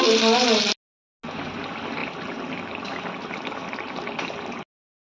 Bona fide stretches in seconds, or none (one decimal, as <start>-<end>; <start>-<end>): 0.0-5.0